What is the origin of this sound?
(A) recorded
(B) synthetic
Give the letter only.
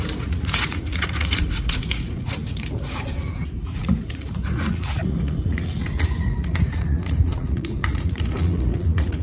B